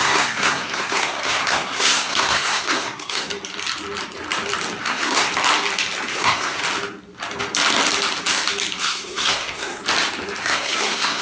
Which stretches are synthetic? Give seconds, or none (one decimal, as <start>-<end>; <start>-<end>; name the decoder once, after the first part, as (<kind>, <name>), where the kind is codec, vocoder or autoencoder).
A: 0.0-3.3 (codec, SNAC); 4.8-5.3; 6.1-6.6; 8.8-9.8; 10.4-11.2

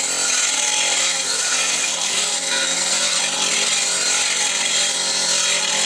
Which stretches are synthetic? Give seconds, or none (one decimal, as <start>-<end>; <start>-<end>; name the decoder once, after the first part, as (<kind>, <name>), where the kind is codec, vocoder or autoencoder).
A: 1.0-3.2 (codec, SNAC)

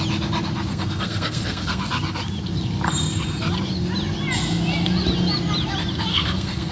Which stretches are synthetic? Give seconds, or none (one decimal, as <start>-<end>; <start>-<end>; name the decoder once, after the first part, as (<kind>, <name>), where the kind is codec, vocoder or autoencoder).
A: 0.7-1.8 (codec, SNAC); 6.1-6.7